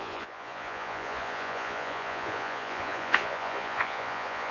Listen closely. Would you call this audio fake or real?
fake